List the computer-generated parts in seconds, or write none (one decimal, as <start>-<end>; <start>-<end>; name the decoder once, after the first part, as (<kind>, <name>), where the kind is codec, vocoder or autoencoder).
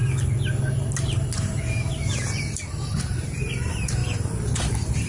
3.0-5.1 (vocoder, BigVGAN v2)